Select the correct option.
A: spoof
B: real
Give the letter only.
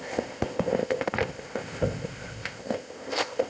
A